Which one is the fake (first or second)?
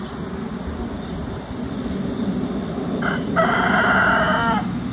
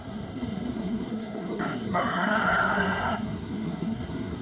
second